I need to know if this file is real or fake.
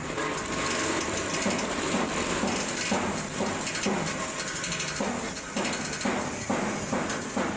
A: real